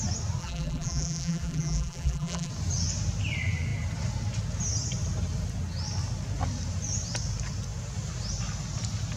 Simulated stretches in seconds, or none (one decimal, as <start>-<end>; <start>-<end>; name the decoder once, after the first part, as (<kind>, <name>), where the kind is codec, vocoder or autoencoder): 0.4-2.5 (vocoder, BigVGAN v2)